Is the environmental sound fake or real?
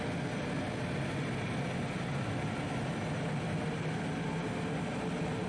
real